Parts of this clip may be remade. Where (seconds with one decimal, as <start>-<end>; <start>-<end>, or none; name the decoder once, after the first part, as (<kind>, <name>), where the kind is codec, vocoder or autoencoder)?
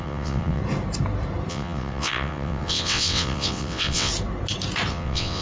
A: 0.0-0.6 (vocoder, WaveNeXt); 1.5-4.1; 4.9-5.4